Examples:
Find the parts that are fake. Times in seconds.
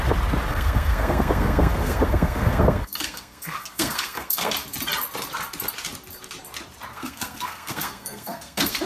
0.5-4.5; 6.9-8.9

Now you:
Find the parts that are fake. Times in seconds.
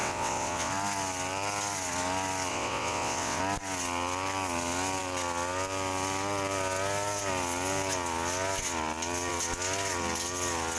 0.0-0.7; 2.5-3.4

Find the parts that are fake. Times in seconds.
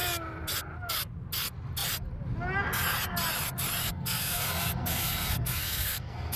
3.8-6.4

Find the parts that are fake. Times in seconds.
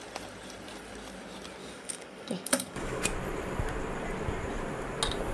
1.6-3.0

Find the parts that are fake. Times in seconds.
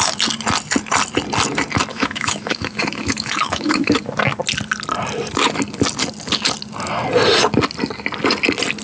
1.9-4.0